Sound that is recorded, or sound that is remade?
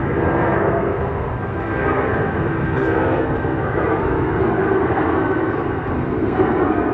remade